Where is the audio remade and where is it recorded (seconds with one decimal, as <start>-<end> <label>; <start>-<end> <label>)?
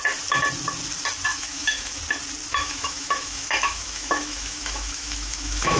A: 0.0-1.3 recorded; 1.3-2.0 remade; 2.0-2.5 recorded; 2.5-5.8 remade